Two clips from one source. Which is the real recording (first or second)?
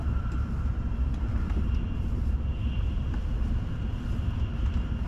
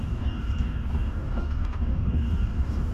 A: first